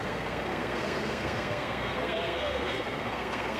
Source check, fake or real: fake